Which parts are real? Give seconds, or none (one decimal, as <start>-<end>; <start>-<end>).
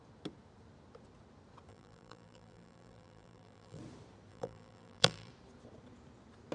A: 0.0-1.7; 3.8-4.3; 5.3-6.5